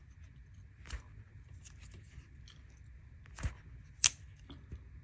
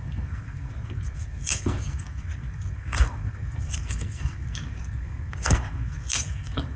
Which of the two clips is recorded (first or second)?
first